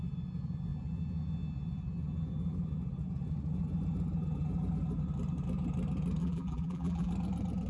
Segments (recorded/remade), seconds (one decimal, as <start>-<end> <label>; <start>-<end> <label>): 0.0-6.2 recorded; 6.2-7.1 remade; 7.1-7.7 recorded